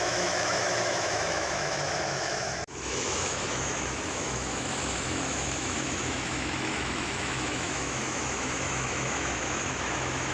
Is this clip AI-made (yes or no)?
yes